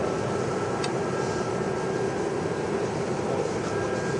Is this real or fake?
real